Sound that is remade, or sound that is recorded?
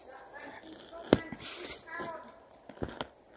recorded